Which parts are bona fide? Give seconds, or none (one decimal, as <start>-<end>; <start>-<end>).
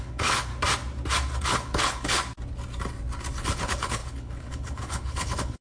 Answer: 0.5-1.4; 2.2-3.4